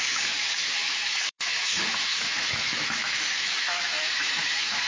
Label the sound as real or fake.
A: fake